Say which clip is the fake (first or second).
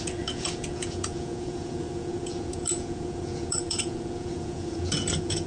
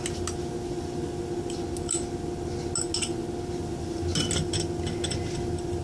first